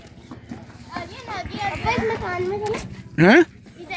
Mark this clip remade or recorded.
recorded